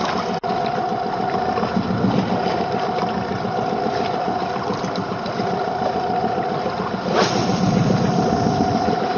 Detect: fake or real real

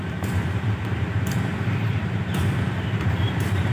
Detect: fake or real fake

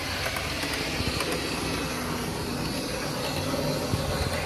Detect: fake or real real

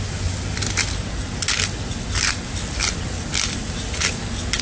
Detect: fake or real real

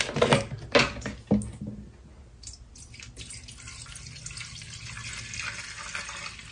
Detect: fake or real real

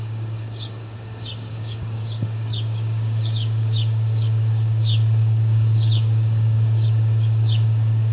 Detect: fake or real fake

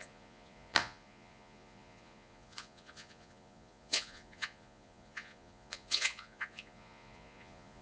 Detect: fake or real fake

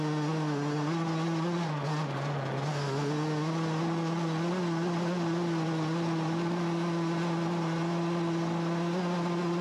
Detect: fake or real real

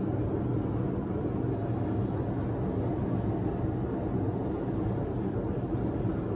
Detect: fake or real real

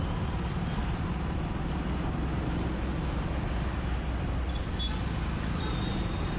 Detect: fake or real real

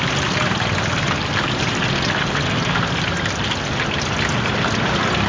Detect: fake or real real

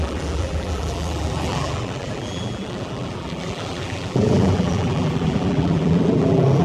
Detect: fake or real fake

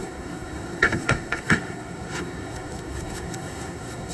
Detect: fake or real fake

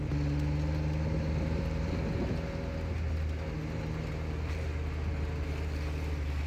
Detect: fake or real real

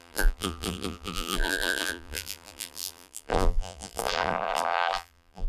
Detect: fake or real fake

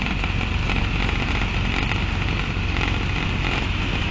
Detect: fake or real real